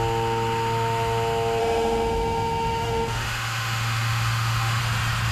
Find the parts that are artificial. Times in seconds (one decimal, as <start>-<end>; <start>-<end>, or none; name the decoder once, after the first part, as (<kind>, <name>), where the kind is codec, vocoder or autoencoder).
1.6-4.8 (autoencoder, DAC-VAE)